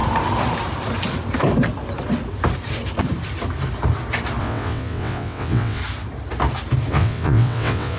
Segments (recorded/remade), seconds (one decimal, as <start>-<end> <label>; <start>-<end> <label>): 0.0-4.4 recorded; 4.4-5.8 remade; 5.8-6.9 recorded; 6.9-8.0 remade